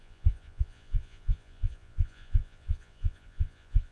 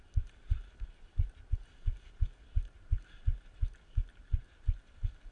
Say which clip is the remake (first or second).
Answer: first